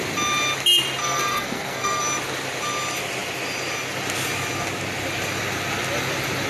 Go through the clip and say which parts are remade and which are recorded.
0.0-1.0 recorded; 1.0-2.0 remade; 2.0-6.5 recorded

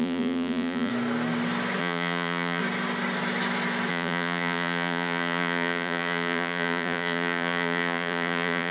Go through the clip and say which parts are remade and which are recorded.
0.0-0.9 remade; 0.9-1.8 recorded; 1.8-2.6 remade; 2.6-3.9 recorded; 3.9-8.7 remade

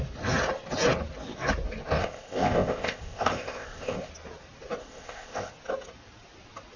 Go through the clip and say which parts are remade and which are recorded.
0.0-2.0 recorded; 2.0-4.1 remade; 4.1-4.8 recorded; 4.8-5.5 remade; 5.5-6.8 recorded